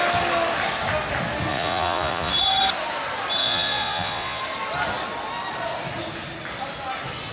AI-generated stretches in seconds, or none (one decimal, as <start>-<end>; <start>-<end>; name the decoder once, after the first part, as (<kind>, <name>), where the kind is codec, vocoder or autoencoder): 1.5-2.3 (vocoder, Vocos); 3.4-4.4